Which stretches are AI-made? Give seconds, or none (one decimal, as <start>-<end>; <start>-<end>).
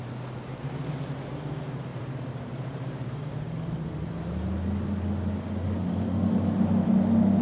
1.9-4.1